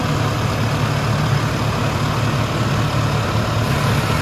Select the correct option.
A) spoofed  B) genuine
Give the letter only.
B